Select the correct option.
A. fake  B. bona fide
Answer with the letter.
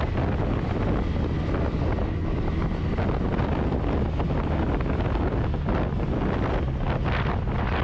B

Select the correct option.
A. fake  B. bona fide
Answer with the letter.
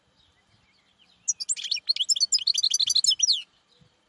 B